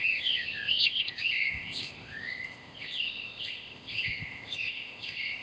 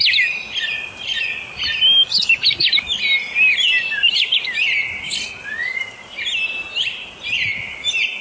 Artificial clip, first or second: first